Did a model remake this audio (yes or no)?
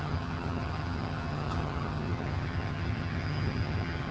yes